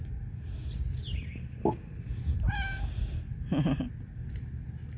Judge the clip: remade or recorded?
recorded